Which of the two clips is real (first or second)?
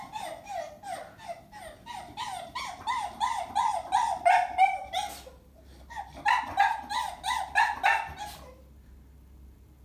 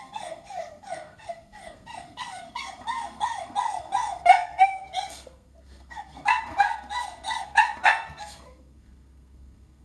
first